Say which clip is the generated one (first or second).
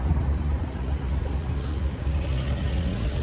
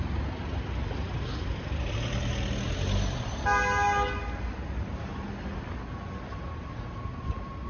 first